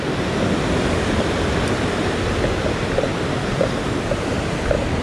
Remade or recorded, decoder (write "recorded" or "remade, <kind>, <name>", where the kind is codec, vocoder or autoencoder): recorded